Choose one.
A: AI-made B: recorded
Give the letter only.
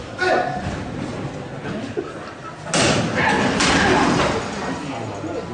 B